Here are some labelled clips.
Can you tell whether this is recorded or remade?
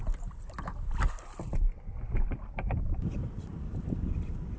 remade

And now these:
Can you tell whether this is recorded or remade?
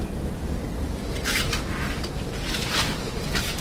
recorded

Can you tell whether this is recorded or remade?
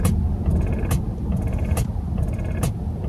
recorded